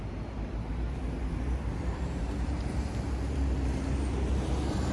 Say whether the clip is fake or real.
fake